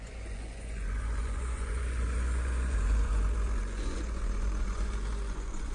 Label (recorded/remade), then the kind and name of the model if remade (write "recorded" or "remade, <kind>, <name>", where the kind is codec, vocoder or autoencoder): remade, vocoder, Vocos